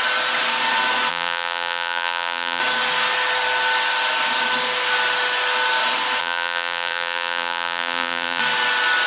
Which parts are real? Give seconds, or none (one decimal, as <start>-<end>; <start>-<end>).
0.0-1.1; 2.6-6.2; 8.4-9.1